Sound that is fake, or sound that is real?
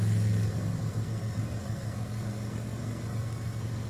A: fake